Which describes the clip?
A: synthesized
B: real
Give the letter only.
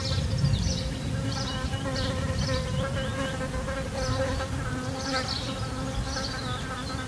B